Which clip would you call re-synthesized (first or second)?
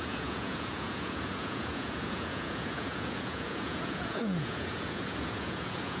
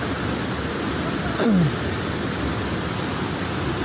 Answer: first